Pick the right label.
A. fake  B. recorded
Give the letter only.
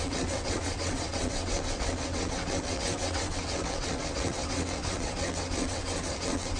A